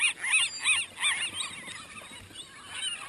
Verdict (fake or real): real